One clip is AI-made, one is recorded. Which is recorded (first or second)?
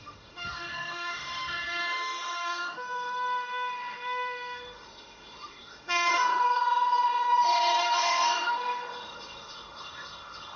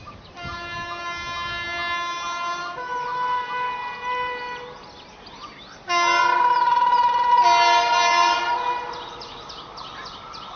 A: second